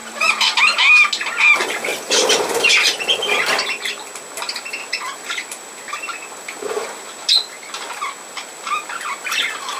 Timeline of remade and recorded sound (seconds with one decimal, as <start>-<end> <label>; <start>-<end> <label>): 0.0-0.6 remade; 0.6-9.8 recorded

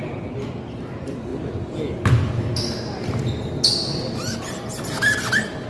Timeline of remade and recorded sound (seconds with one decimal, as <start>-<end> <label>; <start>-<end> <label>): 0.0-5.7 recorded

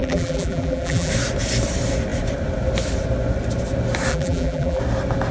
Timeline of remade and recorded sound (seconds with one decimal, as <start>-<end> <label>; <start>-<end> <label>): 0.0-1.1 remade; 1.1-4.1 recorded; 4.1-4.8 remade; 4.8-5.3 recorded

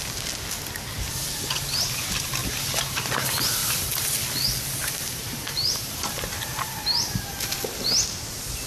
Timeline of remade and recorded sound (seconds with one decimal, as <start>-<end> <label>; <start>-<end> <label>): 0.0-2.4 recorded; 2.4-3.2 remade; 3.2-5.0 recorded; 5.0-7.3 remade; 7.3-8.7 recorded

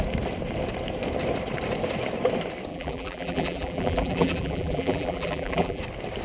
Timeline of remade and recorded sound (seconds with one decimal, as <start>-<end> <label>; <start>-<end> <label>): 0.0-2.7 recorded; 2.7-5.8 remade; 5.8-6.2 recorded